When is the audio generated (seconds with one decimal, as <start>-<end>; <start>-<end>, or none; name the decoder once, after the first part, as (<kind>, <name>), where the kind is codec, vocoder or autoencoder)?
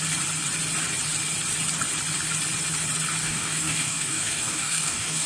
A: 3.2-5.3 (codec, DAC)